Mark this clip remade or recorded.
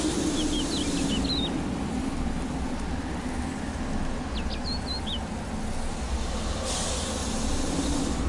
recorded